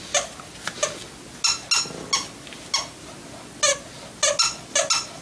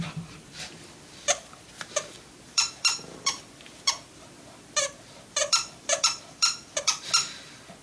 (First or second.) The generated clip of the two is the second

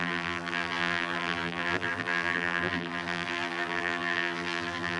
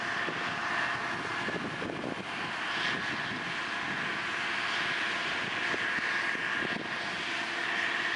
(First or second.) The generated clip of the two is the first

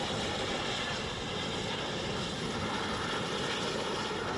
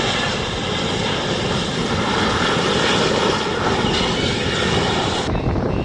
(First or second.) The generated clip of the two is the second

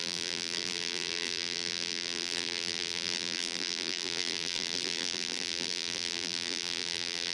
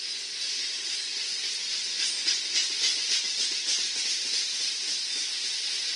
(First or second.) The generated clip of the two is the first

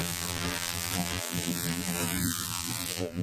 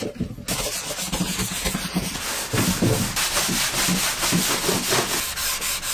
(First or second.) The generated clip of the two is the first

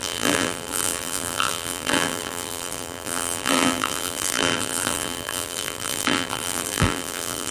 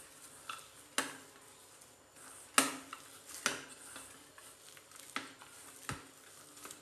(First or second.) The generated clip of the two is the first